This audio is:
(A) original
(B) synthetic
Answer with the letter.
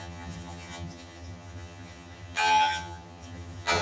B